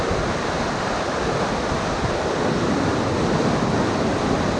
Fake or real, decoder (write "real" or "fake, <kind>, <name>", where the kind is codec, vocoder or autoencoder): fake, vocoder, BigVGAN v2